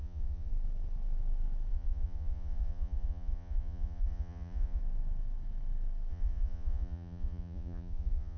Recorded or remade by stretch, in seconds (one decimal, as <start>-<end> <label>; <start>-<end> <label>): 0.0-0.5 remade; 0.5-1.7 recorded; 1.7-4.8 remade; 4.8-6.1 recorded; 6.1-8.4 remade

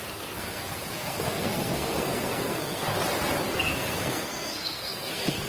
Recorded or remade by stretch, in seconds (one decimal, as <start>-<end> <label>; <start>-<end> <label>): 0.0-2.9 remade; 2.9-3.5 recorded; 3.5-5.5 remade

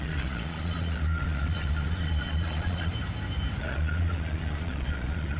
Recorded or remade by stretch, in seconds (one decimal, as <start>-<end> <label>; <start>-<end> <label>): 0.0-2.9 remade; 2.9-3.6 recorded; 3.6-5.4 remade

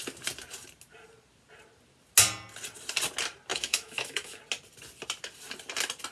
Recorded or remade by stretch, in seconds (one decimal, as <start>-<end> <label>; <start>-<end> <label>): 0.0-3.5 recorded; 3.5-4.4 remade; 4.4-6.1 recorded

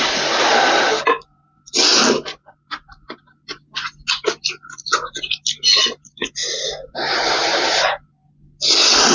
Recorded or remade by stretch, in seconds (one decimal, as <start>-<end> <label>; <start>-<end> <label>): 0.0-9.1 recorded